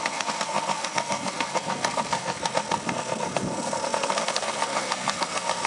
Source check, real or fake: fake